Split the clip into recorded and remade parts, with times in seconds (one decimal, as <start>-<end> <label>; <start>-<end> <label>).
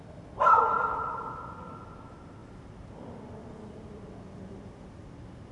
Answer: 0.0-2.4 remade; 2.4-3.9 recorded; 3.9-5.5 remade